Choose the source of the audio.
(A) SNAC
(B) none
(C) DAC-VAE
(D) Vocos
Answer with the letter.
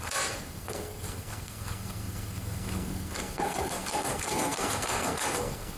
A